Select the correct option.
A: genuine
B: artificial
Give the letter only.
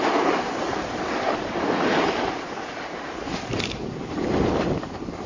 B